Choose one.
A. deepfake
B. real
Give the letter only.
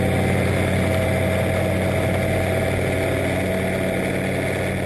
B